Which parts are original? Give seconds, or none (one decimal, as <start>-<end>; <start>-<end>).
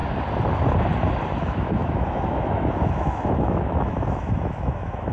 0.0-1.4